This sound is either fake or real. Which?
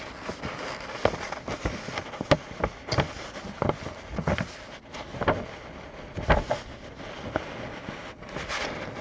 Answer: real